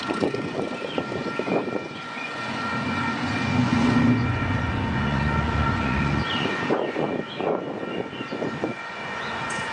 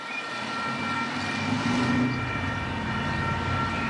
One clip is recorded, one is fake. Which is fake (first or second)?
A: first